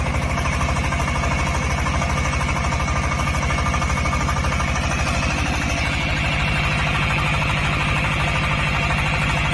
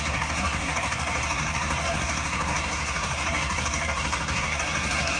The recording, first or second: first